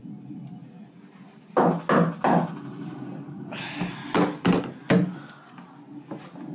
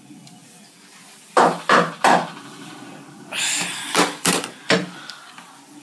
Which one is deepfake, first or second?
second